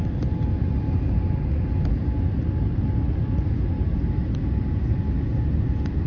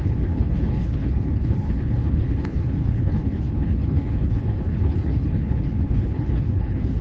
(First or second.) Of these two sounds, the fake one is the second